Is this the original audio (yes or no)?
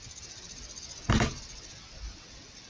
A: yes